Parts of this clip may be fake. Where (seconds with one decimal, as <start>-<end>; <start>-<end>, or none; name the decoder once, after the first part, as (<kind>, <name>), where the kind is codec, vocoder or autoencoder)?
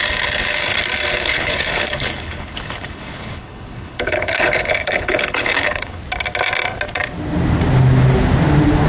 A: 1.2-6.0 (codec, HILCodec)